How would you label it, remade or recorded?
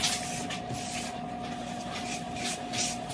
recorded